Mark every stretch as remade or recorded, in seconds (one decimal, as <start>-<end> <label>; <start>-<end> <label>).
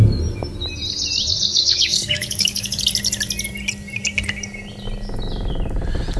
0.0-1.5 recorded; 1.5-2.8 remade; 2.8-6.2 recorded